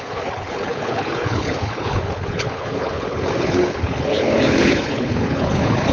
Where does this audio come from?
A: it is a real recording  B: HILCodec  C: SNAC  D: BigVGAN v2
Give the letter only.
B